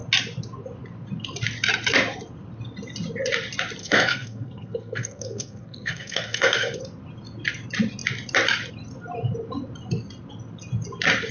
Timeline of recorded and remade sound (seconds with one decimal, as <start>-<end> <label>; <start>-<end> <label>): 0.0-3.8 recorded; 3.8-6.8 remade; 6.8-11.3 recorded